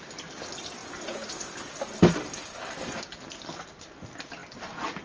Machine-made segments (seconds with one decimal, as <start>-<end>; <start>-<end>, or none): none